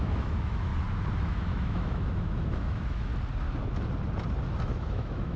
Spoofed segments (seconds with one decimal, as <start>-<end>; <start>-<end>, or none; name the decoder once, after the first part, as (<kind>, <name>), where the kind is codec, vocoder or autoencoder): 0.0-0.7 (autoencoder, DAC-VAE); 1.2-3.1; 4.6-5.4